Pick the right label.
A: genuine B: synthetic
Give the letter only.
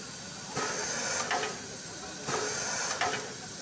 A